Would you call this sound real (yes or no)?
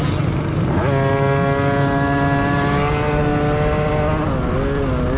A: yes